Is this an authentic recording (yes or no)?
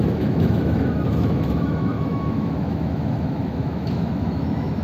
no